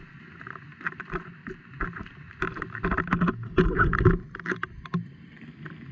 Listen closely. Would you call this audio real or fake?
real